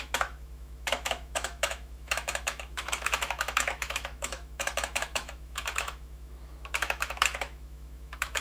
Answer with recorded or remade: remade